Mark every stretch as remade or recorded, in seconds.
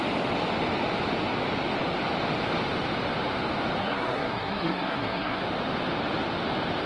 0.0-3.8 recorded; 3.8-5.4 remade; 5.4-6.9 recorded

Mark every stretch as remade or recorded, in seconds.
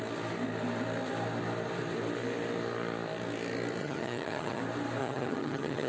0.0-3.8 recorded; 3.8-4.6 remade; 4.6-5.0 recorded; 5.0-5.9 remade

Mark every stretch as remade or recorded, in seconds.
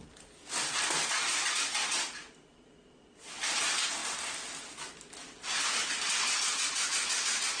0.0-7.6 recorded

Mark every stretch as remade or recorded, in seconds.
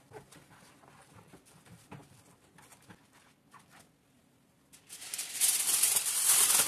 0.0-6.7 recorded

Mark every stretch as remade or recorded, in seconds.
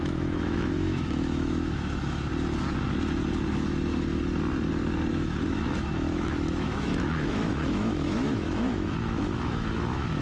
0.0-2.3 remade; 2.3-5.1 recorded; 5.1-10.2 remade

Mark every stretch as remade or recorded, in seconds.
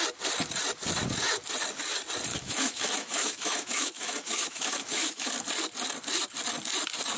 0.0-2.3 recorded; 2.3-5.3 remade; 5.3-7.2 recorded